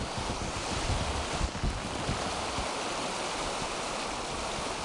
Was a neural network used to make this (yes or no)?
no